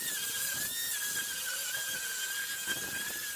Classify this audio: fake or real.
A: real